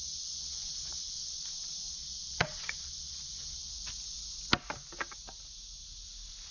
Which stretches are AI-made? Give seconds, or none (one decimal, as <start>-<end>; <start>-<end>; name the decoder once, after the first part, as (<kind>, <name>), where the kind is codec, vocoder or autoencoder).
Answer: 0.0-1.3 (vocoder, Vocos); 2.0-3.7